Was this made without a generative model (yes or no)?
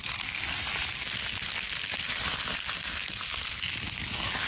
yes